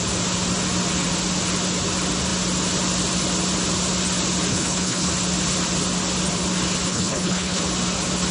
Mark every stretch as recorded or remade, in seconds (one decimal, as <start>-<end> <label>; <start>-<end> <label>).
0.0-4.5 recorded; 4.5-5.1 remade; 5.1-6.9 recorded; 6.9-7.6 remade; 7.6-8.3 recorded